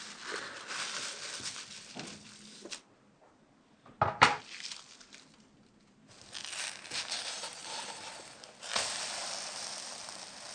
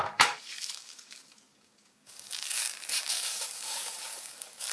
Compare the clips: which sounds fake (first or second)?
second